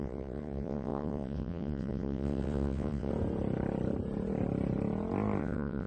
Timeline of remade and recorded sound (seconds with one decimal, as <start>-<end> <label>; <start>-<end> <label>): 0.0-3.1 remade; 3.1-5.4 recorded; 5.4-5.9 remade